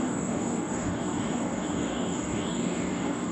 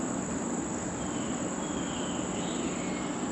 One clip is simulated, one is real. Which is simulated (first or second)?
first